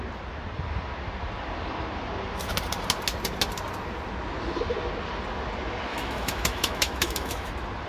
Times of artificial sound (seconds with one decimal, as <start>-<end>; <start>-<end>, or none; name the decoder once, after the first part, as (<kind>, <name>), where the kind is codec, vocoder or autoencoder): 5.9-7.5 (autoencoder, DAC-VAE)